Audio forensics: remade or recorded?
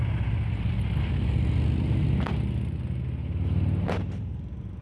recorded